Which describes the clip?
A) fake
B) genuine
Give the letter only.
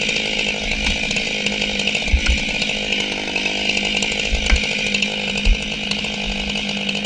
B